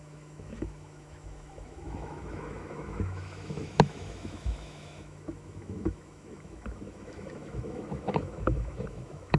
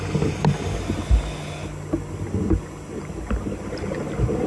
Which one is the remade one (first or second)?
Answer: first